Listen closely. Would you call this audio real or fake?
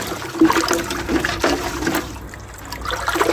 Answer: real